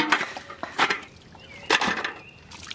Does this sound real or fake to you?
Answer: real